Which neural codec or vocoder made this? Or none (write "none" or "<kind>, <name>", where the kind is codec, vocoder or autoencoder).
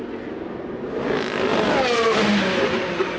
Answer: none